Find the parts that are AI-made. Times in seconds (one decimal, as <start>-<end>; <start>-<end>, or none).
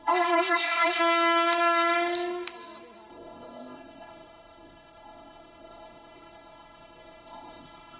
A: 0.0-1.0; 3.1-8.0